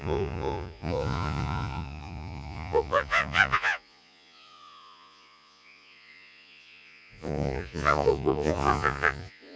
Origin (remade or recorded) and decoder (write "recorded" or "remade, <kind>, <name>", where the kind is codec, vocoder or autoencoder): remade, vocoder, Vocos